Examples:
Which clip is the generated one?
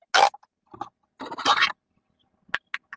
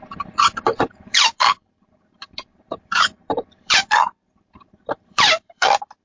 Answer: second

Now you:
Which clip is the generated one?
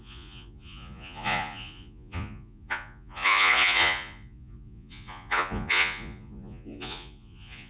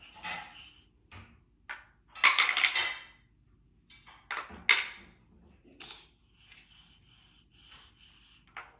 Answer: first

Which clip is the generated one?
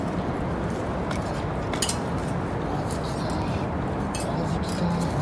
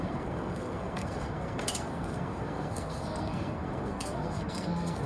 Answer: second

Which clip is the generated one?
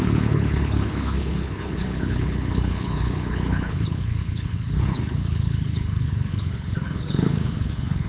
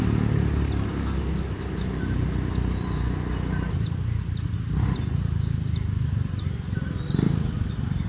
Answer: first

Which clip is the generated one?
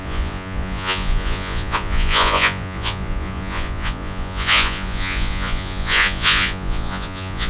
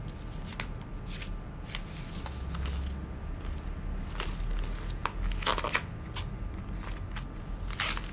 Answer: first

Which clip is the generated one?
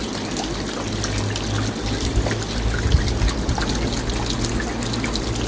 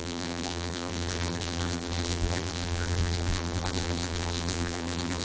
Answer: second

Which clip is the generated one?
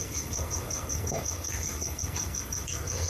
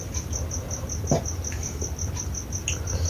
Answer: first